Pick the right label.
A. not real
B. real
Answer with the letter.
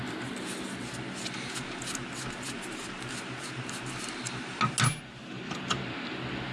B